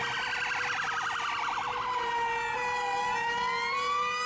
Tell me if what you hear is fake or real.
real